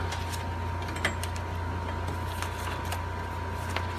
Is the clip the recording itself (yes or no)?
yes